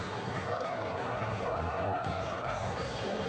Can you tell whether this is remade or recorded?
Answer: remade